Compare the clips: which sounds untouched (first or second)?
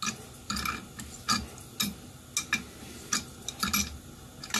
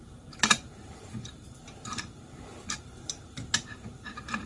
first